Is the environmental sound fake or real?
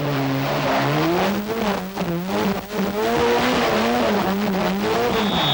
real